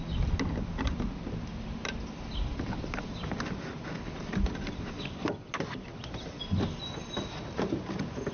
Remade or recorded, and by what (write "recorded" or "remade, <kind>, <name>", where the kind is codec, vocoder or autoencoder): recorded